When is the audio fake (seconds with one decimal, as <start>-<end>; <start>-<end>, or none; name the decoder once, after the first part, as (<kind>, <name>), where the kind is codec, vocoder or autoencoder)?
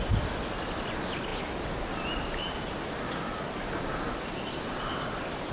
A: 3.3-4.1 (vocoder, BigVGAN v2)